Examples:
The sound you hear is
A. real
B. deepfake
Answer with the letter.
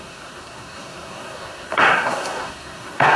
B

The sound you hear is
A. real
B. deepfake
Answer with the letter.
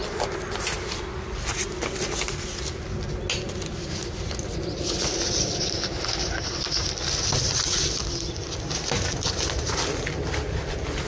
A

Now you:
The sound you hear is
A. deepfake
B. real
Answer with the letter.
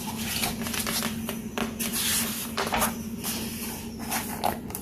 B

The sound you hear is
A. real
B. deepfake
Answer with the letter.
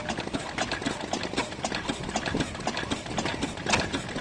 A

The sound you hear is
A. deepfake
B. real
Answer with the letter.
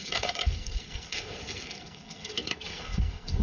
A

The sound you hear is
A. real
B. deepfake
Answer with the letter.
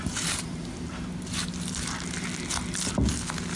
A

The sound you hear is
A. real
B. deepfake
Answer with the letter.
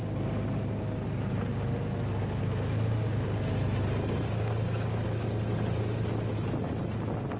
A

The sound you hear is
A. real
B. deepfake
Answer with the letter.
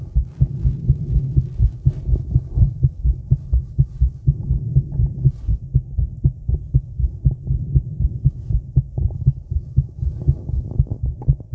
A